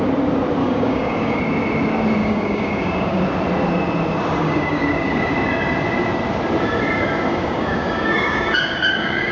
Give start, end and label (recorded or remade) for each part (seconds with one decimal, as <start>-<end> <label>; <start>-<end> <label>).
0.0-0.6 recorded; 0.6-1.4 remade; 1.4-2.2 recorded; 2.2-3.2 remade; 3.2-4.4 recorded; 4.4-5.3 remade; 5.3-7.3 recorded; 7.3-9.3 remade